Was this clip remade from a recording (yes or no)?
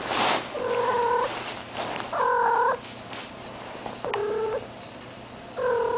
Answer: no